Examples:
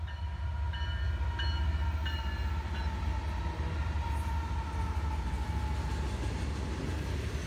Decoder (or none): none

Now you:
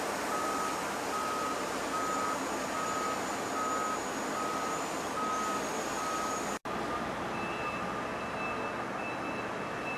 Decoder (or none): none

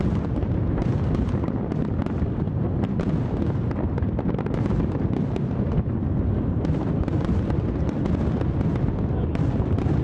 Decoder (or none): none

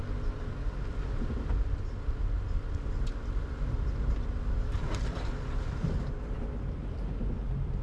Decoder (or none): none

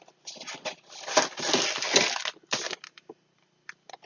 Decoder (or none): none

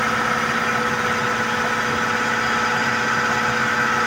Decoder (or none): none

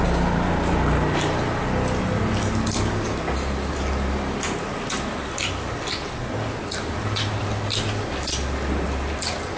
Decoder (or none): none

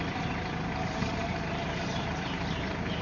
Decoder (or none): vocoder, BigVGAN v2